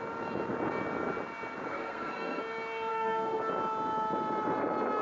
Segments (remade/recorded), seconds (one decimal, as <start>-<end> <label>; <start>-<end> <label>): 0.0-1.7 recorded; 1.7-2.4 remade; 2.4-2.9 recorded; 2.9-3.4 remade; 3.4-5.0 recorded